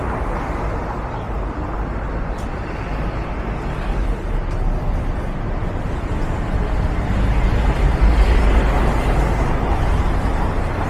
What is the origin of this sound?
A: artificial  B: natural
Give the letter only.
B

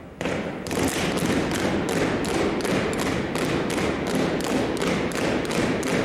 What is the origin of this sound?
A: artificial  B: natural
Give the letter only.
B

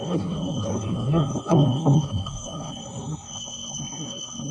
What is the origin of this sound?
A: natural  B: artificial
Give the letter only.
B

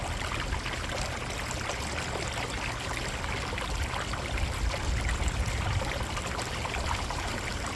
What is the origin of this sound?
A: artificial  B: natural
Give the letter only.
B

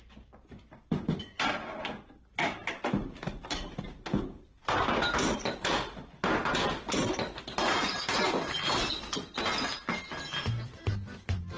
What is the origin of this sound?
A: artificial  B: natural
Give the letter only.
B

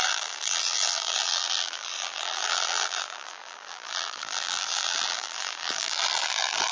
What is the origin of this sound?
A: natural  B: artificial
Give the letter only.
B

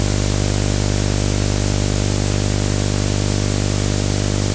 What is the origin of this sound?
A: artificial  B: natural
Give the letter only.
B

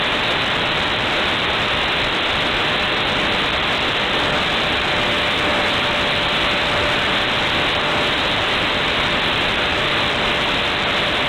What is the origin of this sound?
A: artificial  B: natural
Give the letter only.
B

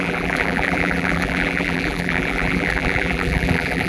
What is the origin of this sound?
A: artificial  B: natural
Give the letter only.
A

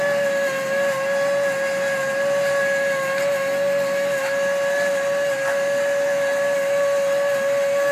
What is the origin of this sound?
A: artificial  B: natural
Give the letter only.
B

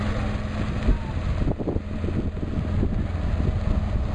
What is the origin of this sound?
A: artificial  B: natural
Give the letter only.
B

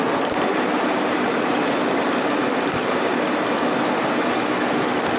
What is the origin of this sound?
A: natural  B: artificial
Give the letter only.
A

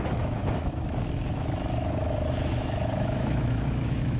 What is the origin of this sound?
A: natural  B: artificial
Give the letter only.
B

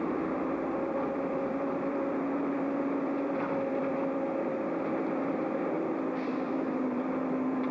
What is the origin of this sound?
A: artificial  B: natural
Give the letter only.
A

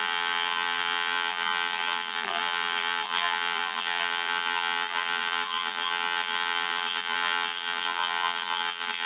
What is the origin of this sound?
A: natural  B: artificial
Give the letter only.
B